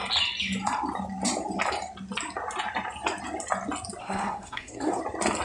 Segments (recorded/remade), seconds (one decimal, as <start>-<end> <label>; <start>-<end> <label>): 0.0-4.0 recorded; 4.0-5.0 remade; 5.0-5.4 recorded